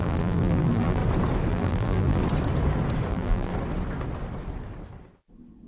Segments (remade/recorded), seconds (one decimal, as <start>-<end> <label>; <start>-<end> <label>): 0.0-1.0 remade; 1.0-1.5 recorded; 1.5-2.2 remade; 2.2-3.1 recorded; 3.1-3.5 remade; 3.5-5.7 recorded